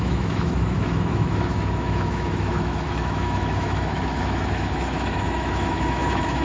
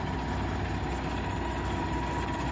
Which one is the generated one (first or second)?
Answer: first